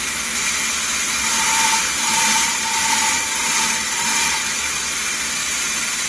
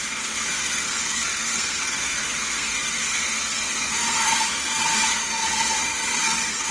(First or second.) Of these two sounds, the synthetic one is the second